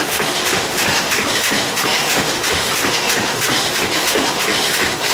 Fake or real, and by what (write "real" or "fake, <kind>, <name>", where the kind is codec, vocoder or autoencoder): fake, autoencoder, DAC-VAE